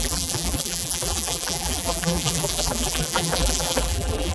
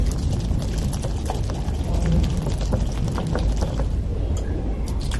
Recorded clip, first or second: second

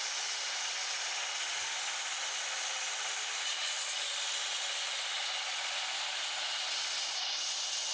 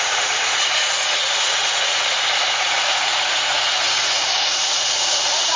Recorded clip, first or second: first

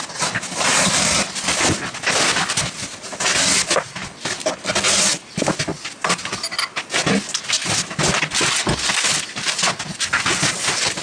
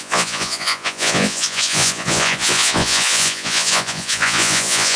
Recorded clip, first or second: first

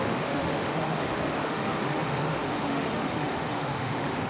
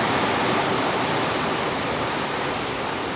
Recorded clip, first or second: second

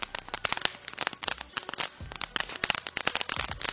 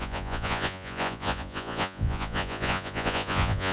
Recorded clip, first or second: first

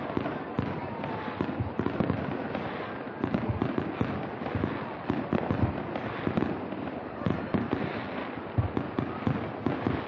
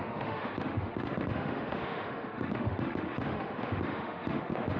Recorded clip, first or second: first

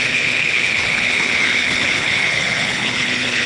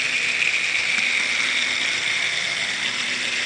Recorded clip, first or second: second